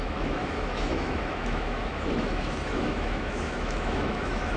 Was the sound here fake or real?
fake